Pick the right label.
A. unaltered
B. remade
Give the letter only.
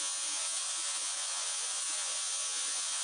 B